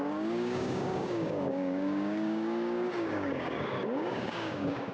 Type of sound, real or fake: fake